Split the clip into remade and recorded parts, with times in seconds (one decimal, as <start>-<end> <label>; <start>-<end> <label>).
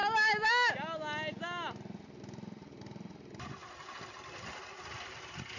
0.0-0.7 remade; 0.7-5.6 recorded